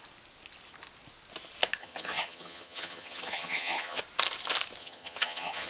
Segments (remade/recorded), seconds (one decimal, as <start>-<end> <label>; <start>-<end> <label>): 0.0-1.8 recorded; 1.8-4.0 remade; 4.0-4.8 recorded; 4.8-5.7 remade